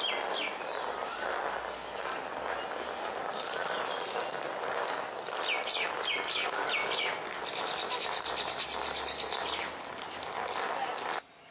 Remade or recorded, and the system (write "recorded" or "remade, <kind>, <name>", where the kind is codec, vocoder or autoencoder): recorded